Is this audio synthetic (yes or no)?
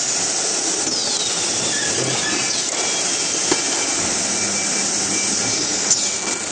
no